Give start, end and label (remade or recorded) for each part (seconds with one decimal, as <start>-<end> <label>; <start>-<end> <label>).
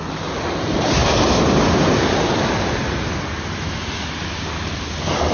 0.0-5.3 recorded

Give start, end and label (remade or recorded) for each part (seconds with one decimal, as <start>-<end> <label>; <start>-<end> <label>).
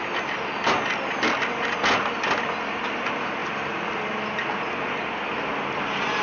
0.0-6.2 recorded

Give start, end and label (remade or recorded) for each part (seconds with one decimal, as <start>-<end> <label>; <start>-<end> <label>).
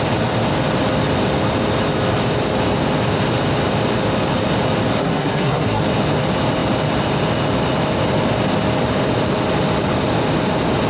0.0-5.0 recorded; 5.0-5.8 remade; 5.8-10.9 recorded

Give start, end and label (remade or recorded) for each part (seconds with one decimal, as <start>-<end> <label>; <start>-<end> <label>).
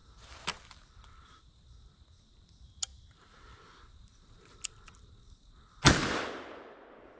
0.0-7.2 recorded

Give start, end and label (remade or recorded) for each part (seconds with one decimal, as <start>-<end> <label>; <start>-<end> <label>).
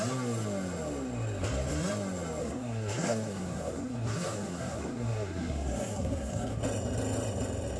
0.0-2.4 recorded; 2.4-6.6 remade; 6.6-7.8 recorded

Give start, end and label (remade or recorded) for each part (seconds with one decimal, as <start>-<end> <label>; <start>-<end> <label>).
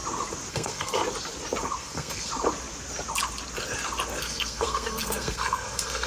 0.0-0.5 recorded; 0.5-1.0 remade; 1.0-1.8 recorded; 1.8-2.3 remade; 2.3-4.2 recorded; 4.2-6.1 remade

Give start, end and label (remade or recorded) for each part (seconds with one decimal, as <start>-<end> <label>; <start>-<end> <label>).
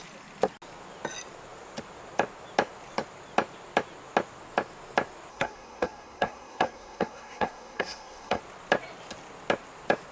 0.0-5.3 recorded; 5.3-8.4 remade; 8.4-10.1 recorded